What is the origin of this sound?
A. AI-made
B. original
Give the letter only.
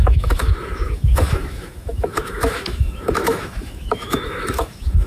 A